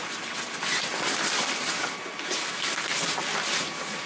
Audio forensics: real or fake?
real